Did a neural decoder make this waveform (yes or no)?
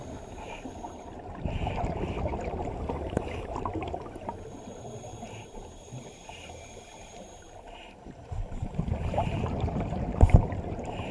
yes